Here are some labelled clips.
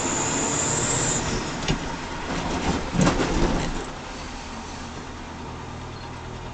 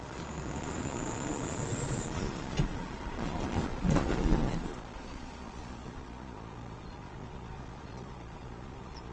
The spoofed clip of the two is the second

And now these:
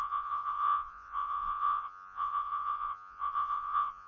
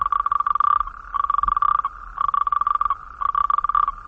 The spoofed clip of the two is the first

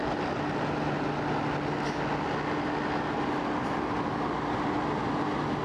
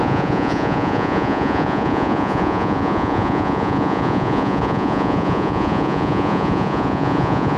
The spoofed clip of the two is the second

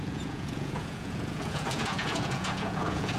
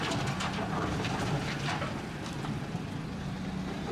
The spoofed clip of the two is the first